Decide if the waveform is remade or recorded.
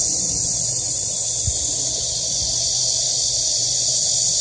remade